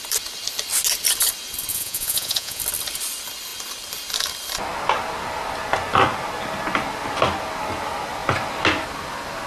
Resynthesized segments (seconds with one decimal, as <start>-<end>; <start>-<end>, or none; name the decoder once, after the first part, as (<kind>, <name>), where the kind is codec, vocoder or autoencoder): 1.7-2.6 (vocoder, Vocos)